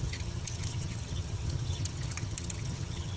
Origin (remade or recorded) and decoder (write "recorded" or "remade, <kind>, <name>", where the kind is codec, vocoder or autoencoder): remade, vocoder, HiFi-GAN